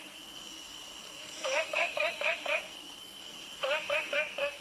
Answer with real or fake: fake